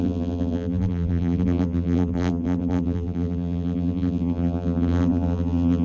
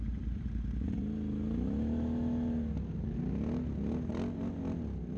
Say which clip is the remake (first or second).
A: first